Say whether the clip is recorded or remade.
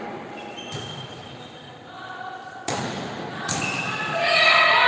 recorded